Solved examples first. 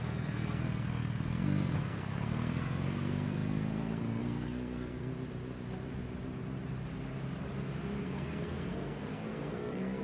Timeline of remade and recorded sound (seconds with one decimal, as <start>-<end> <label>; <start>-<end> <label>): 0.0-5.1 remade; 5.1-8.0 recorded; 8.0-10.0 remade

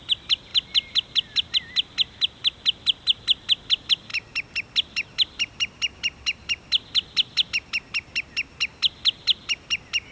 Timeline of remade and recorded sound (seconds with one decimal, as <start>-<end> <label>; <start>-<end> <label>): 0.0-10.1 recorded

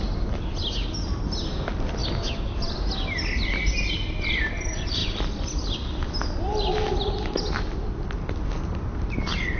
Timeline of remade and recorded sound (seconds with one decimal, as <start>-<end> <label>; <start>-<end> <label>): 0.0-9.6 recorded

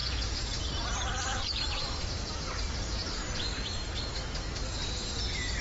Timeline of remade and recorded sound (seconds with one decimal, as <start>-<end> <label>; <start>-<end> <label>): 0.0-1.3 recorded; 1.3-2.3 remade; 2.3-3.0 recorded; 3.0-3.8 remade; 3.8-5.6 recorded

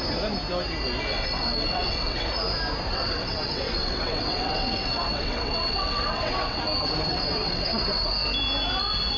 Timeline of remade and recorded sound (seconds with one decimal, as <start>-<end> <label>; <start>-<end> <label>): 0.0-1.1 recorded; 1.1-2.3 remade; 2.3-2.9 recorded; 2.9-6.6 remade; 6.6-7.1 recorded; 7.1-8.1 remade; 8.1-9.2 recorded